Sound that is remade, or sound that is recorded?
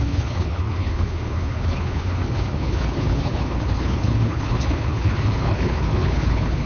remade